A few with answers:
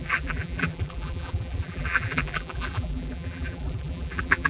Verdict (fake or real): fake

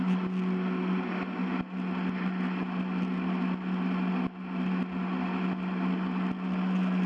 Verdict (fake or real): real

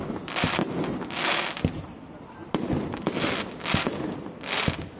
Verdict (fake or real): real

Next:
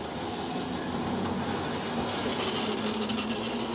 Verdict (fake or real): real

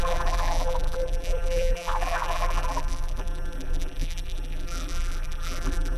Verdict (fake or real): fake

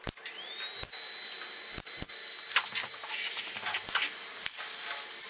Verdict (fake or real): real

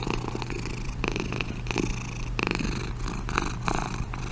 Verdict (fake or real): fake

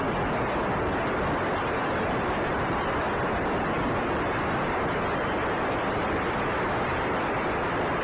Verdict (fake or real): fake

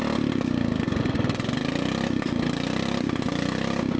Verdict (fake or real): fake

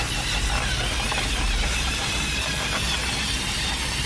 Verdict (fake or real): real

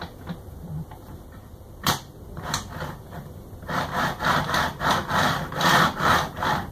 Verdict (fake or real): fake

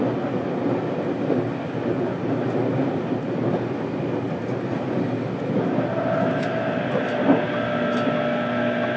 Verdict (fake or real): real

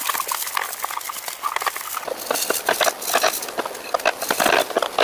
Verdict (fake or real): real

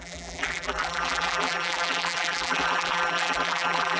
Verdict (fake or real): fake